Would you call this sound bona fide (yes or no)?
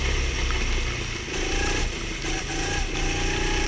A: yes